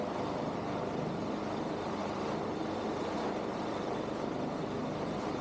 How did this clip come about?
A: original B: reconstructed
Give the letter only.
B